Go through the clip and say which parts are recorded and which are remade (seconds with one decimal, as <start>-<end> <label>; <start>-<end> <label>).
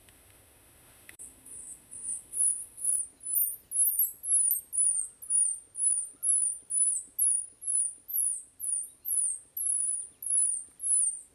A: 0.0-3.0 remade; 3.0-11.3 recorded